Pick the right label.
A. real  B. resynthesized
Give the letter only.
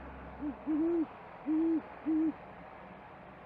A